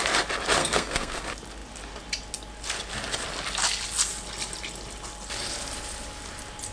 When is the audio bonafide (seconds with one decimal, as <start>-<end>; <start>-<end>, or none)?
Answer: 0.0-0.6; 1.2-6.7